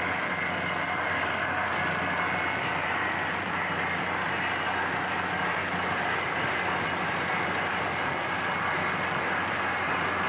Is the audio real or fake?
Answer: real